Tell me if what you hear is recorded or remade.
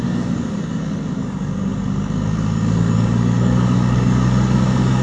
remade